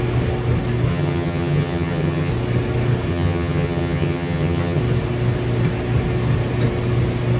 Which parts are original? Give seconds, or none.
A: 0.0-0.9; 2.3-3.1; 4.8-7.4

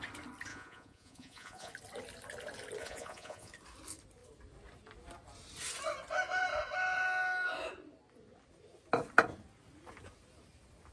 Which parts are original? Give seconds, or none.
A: 0.0-0.5; 1.7-2.8; 3.5-10.9

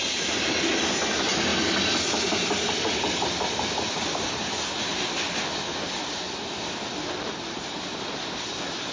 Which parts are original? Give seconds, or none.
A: 1.5-2.7